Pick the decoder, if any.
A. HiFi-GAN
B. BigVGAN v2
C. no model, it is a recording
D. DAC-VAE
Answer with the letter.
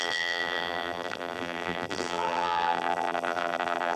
B